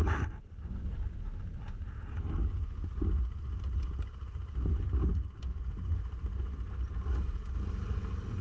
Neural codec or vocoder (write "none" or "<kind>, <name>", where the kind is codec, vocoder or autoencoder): none